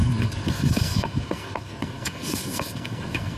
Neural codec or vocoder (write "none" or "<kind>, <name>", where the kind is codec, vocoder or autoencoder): codec, SNAC